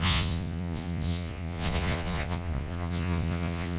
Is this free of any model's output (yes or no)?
no